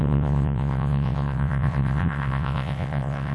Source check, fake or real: fake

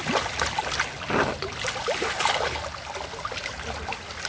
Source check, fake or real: real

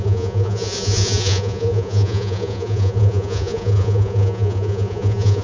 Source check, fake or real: fake